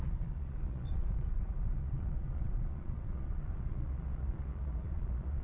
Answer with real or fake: fake